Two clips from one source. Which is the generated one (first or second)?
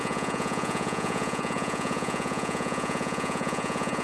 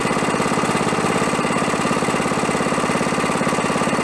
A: first